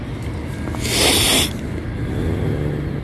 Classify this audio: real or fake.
real